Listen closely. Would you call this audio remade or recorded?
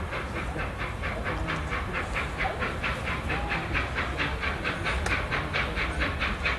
recorded